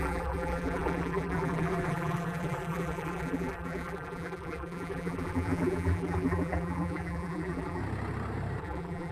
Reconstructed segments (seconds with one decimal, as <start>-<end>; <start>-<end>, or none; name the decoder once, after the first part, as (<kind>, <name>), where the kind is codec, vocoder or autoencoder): 0.0-7.8 (vocoder, BigVGAN v2); 8.6-9.1